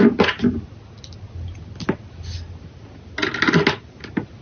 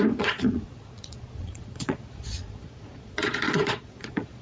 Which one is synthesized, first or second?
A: second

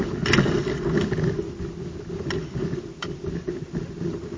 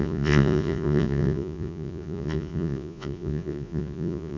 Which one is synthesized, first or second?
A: second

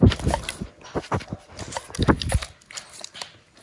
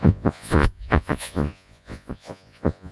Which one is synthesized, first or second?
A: second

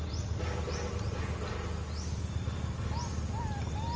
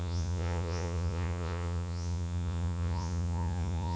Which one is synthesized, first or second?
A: second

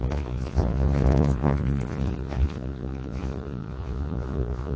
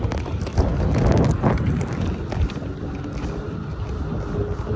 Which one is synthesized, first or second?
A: first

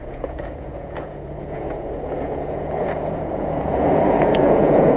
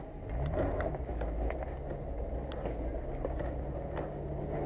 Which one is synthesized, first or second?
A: first